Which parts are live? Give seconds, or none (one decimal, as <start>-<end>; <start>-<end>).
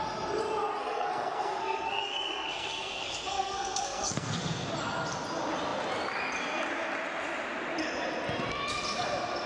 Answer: 0.0-0.8; 4.7-9.5